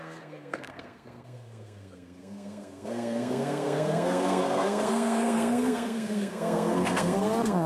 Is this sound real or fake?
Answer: fake